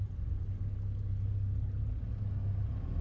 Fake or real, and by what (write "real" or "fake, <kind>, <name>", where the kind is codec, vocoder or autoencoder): real